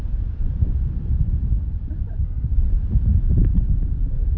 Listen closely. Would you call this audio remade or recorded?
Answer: recorded